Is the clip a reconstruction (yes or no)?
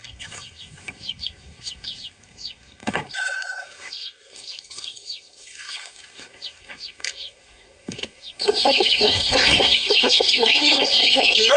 yes